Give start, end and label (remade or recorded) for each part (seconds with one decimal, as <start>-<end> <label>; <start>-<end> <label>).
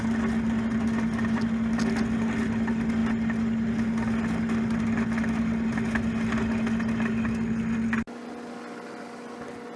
0.0-9.8 recorded